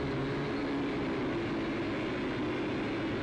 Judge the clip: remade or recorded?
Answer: recorded